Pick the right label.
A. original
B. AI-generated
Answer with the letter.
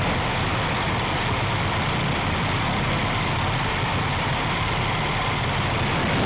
A